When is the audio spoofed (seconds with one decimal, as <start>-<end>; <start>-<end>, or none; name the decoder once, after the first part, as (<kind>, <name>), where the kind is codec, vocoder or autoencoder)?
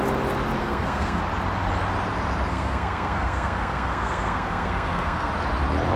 0.6-1.2 (codec, SNAC); 2.5-5.3